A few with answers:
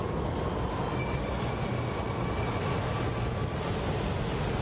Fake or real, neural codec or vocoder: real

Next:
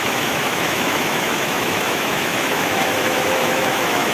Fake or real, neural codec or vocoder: fake, autoencoder, DAC-VAE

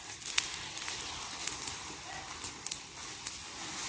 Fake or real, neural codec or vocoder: real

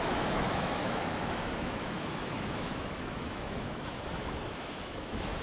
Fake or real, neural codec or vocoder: fake, autoencoder, DAC-VAE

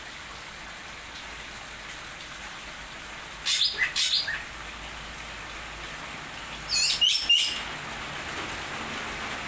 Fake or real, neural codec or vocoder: real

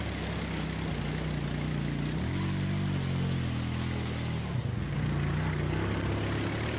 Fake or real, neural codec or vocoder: real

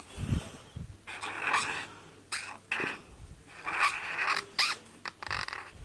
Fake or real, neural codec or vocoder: real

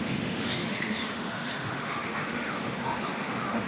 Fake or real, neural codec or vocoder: fake, autoencoder, DAC-VAE